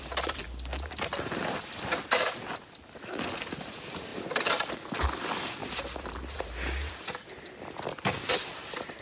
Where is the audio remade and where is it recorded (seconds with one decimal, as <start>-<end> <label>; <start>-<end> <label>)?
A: 0.0-9.0 recorded

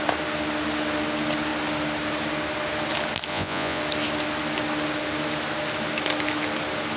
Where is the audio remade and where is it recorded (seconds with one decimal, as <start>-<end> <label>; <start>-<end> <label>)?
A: 0.0-3.3 recorded; 3.3-3.8 remade; 3.8-7.0 recorded

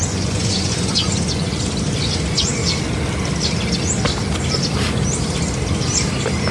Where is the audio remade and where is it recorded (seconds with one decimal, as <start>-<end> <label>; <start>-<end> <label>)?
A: 0.0-1.6 remade; 1.6-6.5 recorded

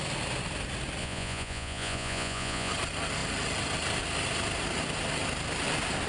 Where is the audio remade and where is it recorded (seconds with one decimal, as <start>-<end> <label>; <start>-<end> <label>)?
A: 0.0-1.0 recorded; 1.0-2.7 remade; 2.7-6.1 recorded

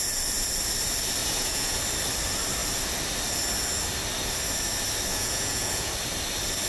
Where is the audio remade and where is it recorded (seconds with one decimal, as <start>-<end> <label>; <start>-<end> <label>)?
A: 0.0-1.2 recorded; 1.2-1.8 remade; 1.8-5.1 recorded; 5.1-5.9 remade; 5.9-6.7 recorded

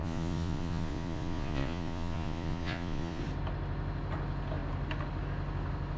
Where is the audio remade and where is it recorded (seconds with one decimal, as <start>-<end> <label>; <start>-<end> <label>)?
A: 0.0-3.2 remade; 3.2-6.0 recorded